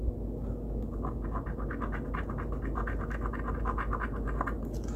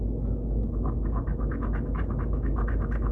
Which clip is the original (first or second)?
first